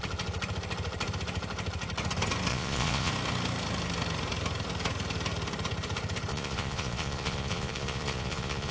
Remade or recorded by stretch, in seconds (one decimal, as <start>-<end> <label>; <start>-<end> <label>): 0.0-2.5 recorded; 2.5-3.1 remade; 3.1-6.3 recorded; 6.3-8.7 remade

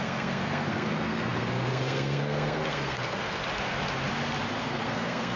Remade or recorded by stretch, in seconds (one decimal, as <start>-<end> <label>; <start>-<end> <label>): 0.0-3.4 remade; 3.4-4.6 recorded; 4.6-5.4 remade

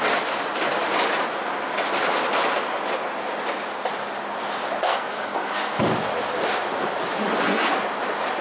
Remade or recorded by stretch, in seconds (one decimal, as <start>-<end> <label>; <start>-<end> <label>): 0.0-4.9 recorded; 4.9-5.8 remade; 5.8-8.4 recorded

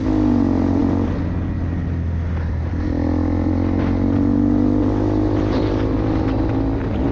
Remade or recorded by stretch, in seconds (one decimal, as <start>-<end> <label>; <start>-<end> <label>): 0.0-7.1 recorded

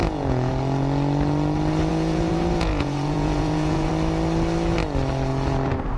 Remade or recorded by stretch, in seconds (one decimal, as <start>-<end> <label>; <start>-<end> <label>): 0.0-0.5 remade; 0.5-1.9 recorded; 1.9-3.9 remade; 3.9-6.0 recorded